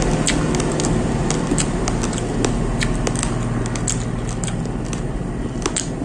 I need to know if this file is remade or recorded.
recorded